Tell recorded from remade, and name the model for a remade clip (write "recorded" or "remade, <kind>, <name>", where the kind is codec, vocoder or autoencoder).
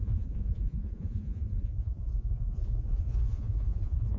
remade, vocoder, Vocos